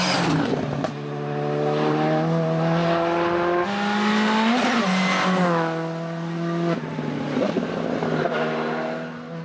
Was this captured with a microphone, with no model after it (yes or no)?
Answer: yes